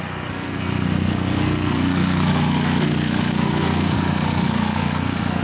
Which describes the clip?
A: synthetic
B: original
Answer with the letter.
A